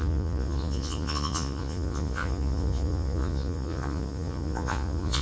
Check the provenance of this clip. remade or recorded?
remade